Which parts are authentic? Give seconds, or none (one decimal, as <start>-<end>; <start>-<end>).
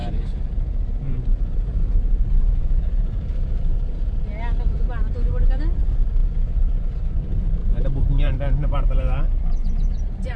4.2-7.6